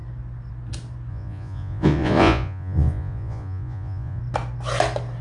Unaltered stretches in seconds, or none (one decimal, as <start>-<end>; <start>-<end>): 0.0-1.1; 4.2-5.2